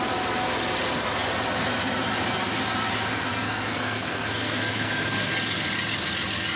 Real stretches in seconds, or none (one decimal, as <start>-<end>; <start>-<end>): 0.0-3.3; 5.3-6.6